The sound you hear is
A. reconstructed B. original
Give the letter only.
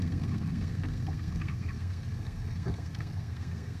A